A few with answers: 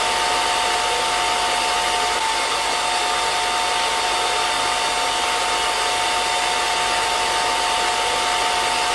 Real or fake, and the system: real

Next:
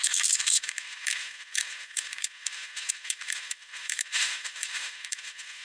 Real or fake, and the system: fake, autoencoder, DAC-VAE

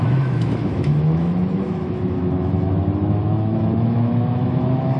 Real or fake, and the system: fake, autoencoder, DAC-VAE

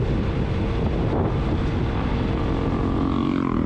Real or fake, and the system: real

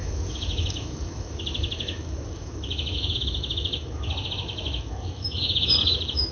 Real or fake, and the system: fake, autoencoder, DAC-VAE